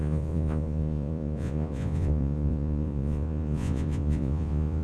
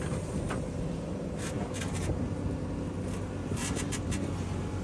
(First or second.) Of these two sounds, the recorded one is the second